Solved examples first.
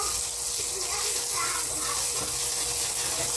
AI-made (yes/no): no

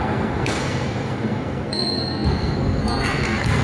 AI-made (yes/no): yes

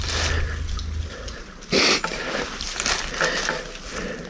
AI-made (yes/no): no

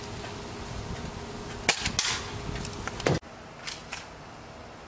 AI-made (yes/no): no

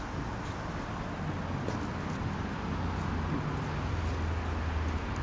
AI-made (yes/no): no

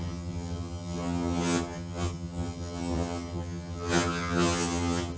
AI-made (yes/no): yes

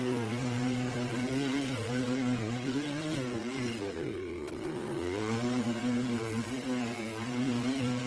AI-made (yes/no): yes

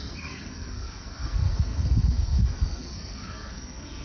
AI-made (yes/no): yes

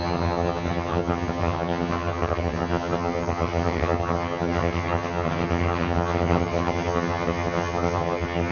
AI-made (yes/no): yes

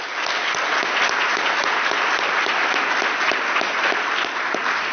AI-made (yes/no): no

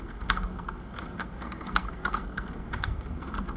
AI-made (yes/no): yes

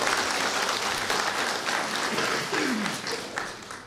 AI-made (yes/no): no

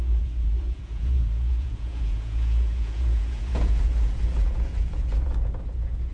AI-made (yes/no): yes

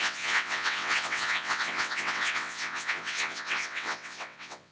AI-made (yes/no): yes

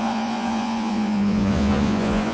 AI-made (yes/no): yes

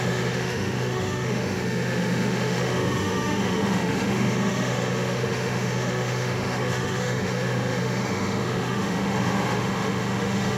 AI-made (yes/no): yes